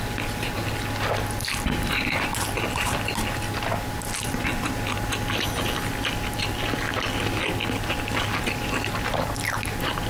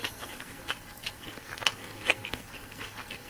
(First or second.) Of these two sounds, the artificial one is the second